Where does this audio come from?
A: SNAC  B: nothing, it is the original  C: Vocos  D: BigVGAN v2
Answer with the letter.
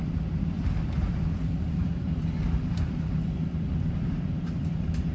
D